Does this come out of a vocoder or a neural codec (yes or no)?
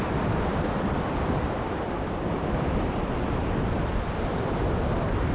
yes